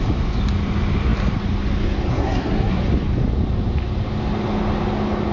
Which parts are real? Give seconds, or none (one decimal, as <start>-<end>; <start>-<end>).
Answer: 0.0-2.1; 2.8-5.3